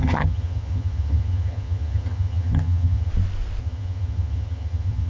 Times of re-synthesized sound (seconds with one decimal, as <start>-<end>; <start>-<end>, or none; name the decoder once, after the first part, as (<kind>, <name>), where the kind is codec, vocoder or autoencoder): 0.0-3.1 (vocoder, HiFi-GAN); 3.6-5.1